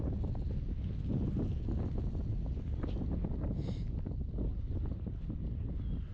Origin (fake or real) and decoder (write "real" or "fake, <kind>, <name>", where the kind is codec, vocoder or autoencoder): real